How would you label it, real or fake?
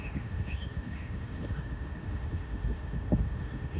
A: fake